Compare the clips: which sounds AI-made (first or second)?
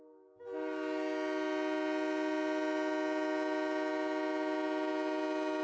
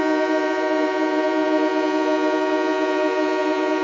second